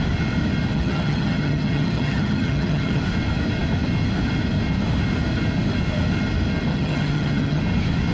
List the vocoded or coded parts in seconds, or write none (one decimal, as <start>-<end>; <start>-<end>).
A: 0.7-3.0; 6.7-7.6